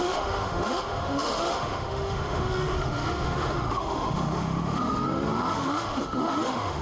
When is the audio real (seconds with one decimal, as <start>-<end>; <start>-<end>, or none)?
none